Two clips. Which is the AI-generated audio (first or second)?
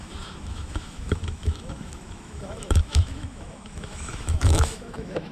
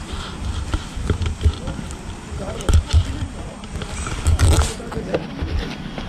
first